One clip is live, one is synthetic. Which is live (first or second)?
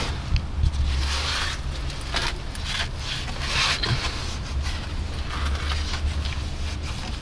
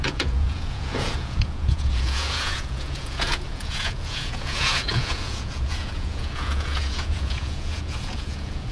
first